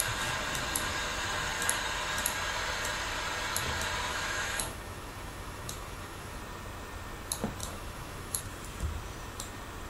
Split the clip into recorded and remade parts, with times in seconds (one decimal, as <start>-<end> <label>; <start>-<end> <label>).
0.0-4.1 recorded; 4.1-6.4 remade; 6.4-7.6 recorded; 7.6-8.4 remade; 8.4-9.9 recorded